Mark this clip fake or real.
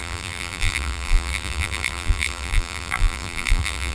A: fake